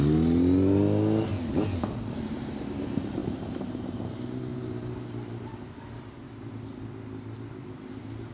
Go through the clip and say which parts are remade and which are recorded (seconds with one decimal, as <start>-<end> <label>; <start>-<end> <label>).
0.0-3.2 recorded; 3.2-3.8 remade; 3.8-4.5 recorded; 4.5-5.7 remade; 5.7-8.3 recorded